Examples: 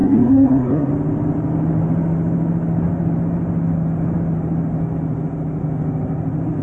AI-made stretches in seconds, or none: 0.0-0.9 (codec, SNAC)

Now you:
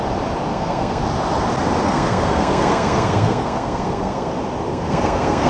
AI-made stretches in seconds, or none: 0.5-1.0 (codec, SNAC); 1.8-4.3; 4.7-5.5

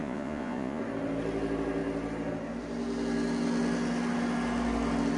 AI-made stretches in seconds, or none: 0.0-0.8 (vocoder, Vocos)

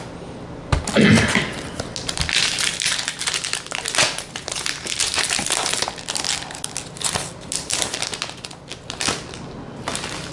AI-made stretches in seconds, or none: 2.7-3.4 (vocoder, BigVGAN v2)